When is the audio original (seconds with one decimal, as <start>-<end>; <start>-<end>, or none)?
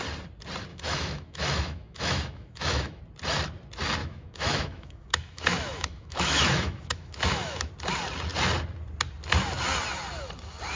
0.0-0.7; 3.0-4.0; 7.7-10.8